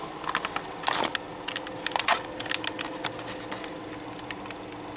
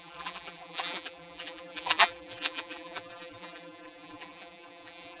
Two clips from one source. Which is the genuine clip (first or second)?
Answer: first